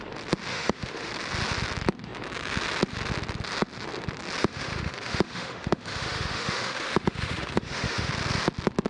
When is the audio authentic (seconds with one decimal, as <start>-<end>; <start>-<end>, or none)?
0.0-0.5; 1.1-4.4; 8.1-8.9